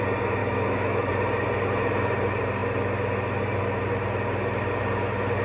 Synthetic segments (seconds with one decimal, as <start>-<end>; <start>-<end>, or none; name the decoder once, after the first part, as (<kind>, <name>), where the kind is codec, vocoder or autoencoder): 0.4-1.1 (autoencoder, DAC-VAE)